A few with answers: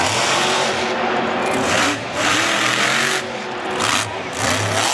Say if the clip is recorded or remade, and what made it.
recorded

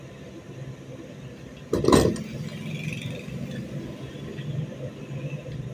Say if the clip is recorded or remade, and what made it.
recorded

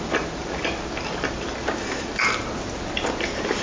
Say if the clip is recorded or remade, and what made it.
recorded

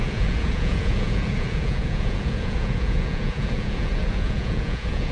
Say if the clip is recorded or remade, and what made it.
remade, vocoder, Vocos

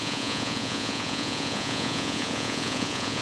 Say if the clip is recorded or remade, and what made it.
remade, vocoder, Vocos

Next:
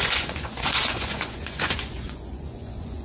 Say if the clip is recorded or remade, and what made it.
remade, vocoder, Vocos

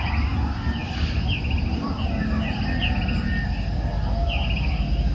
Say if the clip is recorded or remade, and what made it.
recorded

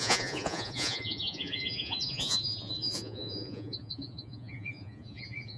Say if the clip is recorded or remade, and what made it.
remade, vocoder, Vocos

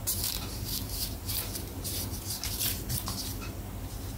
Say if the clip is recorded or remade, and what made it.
recorded